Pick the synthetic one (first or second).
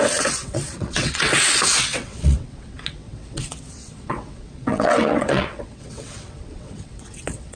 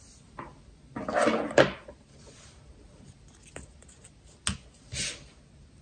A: first